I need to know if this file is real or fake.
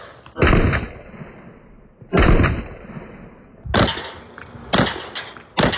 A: real